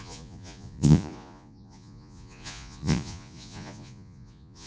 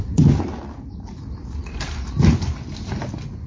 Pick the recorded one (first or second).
second